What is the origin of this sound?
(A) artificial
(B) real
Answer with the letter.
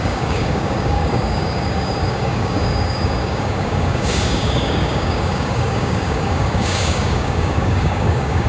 A